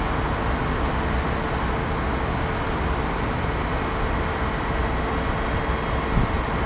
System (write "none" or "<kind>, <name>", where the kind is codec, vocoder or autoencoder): none